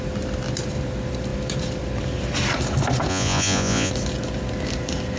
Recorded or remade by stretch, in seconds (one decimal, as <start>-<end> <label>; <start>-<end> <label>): 0.0-3.1 recorded; 3.1-3.9 remade; 3.9-5.2 recorded